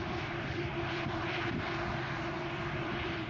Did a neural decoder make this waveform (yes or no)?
yes